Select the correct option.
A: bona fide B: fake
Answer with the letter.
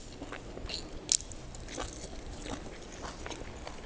A